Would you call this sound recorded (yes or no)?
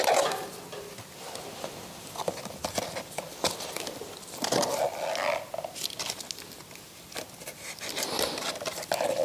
yes